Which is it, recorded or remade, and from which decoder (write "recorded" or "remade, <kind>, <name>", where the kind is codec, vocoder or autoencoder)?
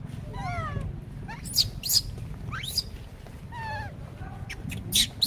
recorded